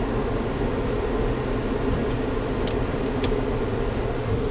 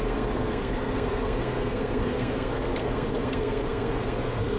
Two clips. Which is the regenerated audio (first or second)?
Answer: second